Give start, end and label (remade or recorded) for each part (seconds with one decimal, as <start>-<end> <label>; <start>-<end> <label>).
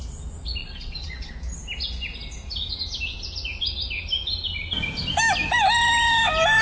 0.0-0.6 recorded; 0.6-1.3 remade; 1.3-6.6 recorded